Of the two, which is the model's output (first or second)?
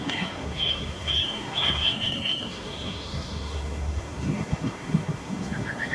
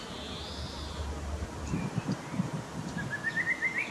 first